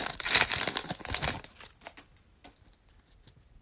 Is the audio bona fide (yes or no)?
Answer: yes